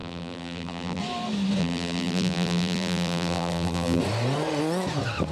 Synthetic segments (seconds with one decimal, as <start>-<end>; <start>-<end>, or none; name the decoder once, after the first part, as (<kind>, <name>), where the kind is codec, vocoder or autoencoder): 0.0-1.0 (vocoder, BigVGAN v2); 1.6-4.0